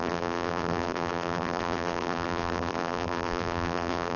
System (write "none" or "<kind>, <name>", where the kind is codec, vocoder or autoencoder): vocoder, BigVGAN v2